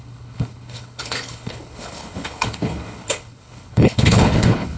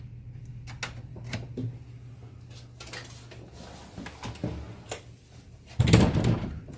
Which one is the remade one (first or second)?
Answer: first